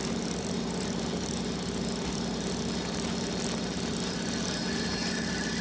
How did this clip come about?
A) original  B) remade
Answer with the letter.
A